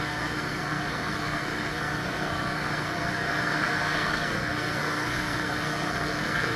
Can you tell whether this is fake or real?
fake